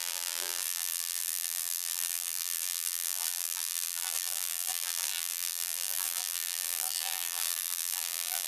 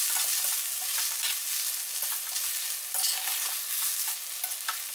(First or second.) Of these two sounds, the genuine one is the second